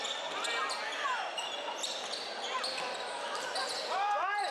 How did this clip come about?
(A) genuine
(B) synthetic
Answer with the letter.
A